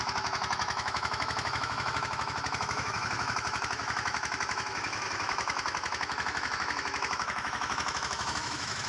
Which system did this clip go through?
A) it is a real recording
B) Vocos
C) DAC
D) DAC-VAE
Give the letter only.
D